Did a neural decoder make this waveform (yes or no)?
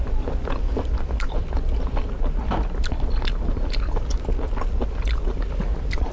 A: no